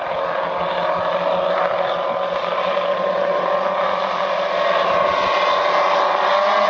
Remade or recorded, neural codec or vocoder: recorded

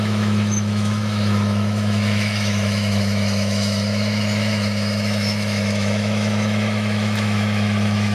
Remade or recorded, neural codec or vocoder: remade, autoencoder, DAC-VAE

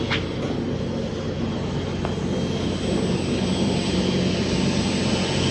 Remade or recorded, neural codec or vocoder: recorded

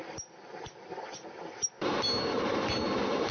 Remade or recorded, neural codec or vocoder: recorded